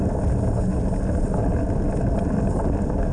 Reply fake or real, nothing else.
real